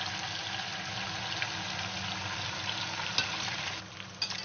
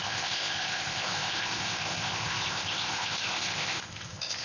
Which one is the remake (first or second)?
second